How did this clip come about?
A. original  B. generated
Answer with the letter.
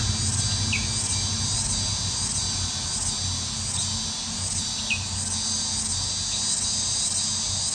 A